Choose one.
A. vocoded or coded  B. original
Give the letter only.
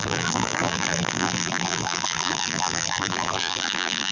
A